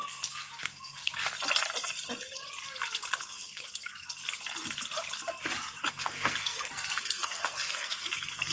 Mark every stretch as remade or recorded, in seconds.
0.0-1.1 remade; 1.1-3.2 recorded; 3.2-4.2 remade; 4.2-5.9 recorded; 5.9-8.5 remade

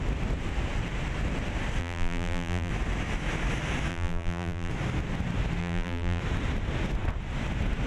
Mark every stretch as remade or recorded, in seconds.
0.0-1.8 recorded; 1.8-2.7 remade; 2.7-3.9 recorded; 3.9-4.7 remade; 4.7-5.6 recorded; 5.6-6.2 remade; 6.2-7.9 recorded

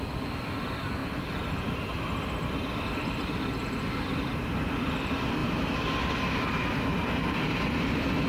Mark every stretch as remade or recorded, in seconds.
0.0-1.0 recorded; 1.0-5.0 remade; 5.0-8.3 recorded